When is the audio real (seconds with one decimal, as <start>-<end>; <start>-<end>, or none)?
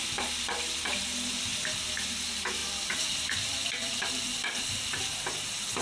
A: 0.0-2.6; 5.0-5.8